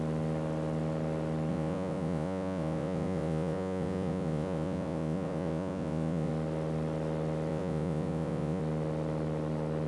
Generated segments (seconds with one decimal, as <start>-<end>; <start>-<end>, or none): 1.5-6.3; 7.5-8.6